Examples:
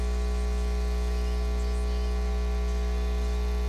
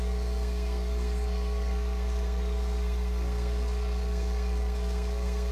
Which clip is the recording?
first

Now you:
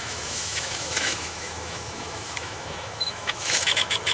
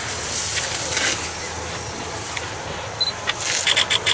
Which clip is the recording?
second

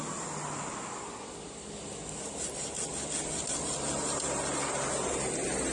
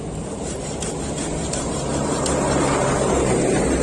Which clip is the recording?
first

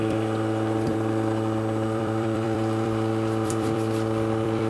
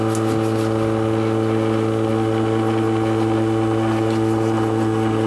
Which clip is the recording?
second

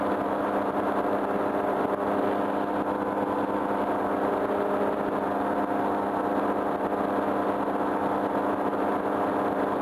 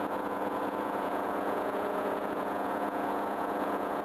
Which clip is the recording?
first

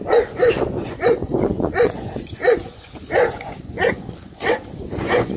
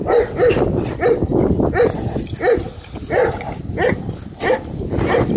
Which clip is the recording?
second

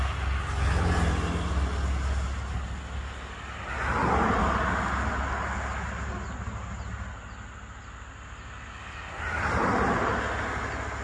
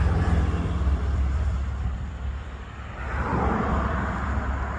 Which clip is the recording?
first